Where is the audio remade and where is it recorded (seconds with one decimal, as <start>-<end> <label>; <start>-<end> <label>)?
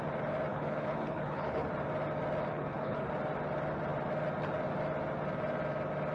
0.0-0.5 recorded; 0.5-1.7 remade; 1.7-2.5 recorded; 2.5-3.1 remade; 3.1-6.1 recorded